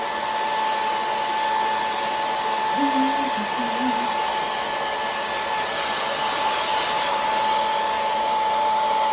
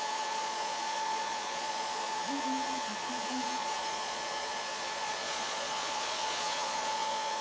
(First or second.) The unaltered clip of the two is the first